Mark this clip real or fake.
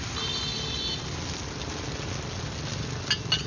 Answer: real